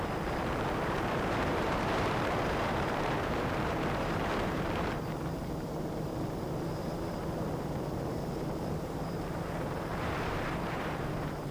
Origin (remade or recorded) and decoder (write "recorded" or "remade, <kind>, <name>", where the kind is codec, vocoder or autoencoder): remade, vocoder, BigVGAN v2